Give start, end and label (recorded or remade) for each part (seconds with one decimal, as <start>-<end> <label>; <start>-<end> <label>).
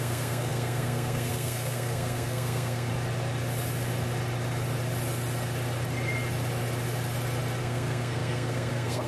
0.0-2.9 remade; 2.9-7.6 recorded; 7.6-9.1 remade